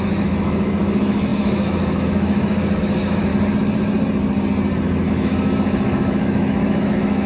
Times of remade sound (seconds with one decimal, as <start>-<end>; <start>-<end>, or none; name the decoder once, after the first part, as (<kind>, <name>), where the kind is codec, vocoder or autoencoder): 0.0-3.3 (autoencoder, DAC-VAE); 5.1-7.3